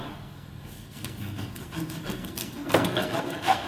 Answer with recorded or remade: remade